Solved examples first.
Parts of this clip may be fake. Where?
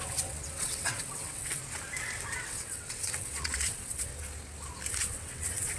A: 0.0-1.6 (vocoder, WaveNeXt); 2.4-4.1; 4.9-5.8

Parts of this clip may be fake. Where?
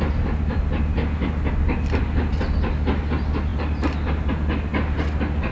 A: none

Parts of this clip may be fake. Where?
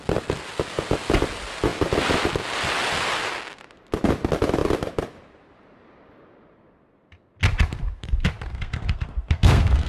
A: 8.5-9.9 (codec, SNAC)